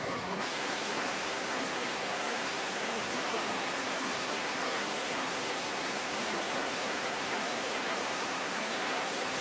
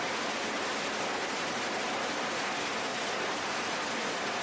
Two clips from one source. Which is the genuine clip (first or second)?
second